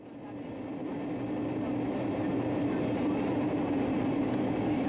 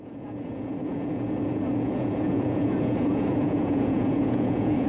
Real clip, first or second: first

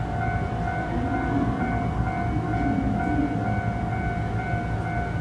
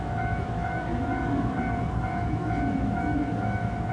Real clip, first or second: first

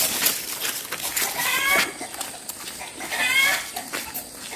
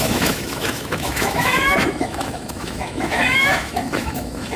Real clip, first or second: first